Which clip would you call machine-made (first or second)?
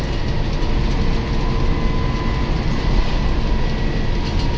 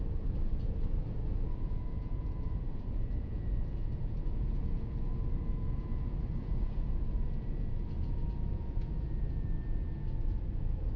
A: second